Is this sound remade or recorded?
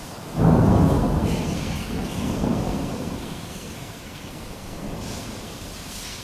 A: remade